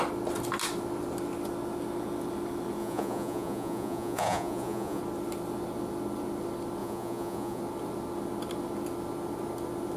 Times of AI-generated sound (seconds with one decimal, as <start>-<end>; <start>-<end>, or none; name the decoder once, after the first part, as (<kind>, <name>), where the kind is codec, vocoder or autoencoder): 2.8-5.0 (vocoder, Vocos); 6.8-7.6